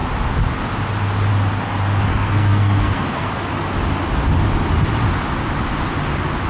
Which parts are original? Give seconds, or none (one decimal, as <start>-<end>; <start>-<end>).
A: 0.0-2.1; 3.3-6.5